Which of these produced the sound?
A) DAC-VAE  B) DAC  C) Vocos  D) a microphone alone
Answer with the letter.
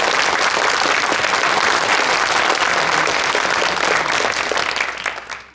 D